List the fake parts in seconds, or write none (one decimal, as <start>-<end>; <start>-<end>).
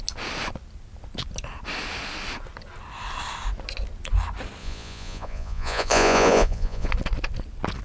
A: 4.6-6.9